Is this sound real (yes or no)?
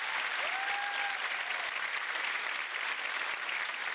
yes